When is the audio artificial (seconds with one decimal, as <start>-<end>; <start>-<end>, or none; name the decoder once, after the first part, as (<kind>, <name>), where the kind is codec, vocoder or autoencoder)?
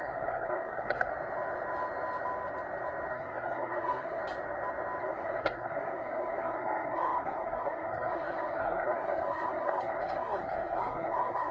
0.0-1.1 (codec, SNAC); 3.1-4.2; 5.0-11.5